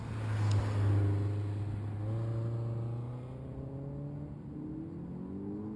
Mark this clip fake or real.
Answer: real